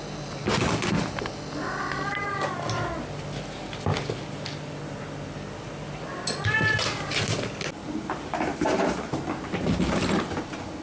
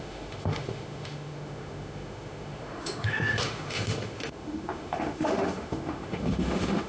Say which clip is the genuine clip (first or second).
first